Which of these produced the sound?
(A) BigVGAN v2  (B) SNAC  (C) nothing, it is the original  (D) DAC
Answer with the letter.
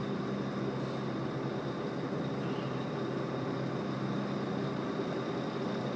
C